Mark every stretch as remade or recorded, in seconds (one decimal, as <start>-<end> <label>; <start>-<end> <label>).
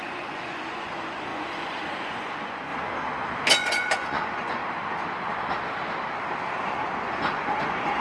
0.0-2.7 remade; 2.7-3.5 recorded; 3.5-4.6 remade; 4.6-6.6 recorded; 6.6-8.0 remade